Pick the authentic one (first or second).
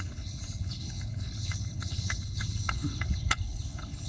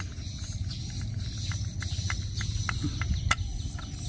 second